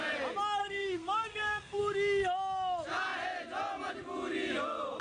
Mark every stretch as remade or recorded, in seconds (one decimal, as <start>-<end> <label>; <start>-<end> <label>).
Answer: 0.0-0.6 recorded; 0.6-1.8 remade; 1.8-5.0 recorded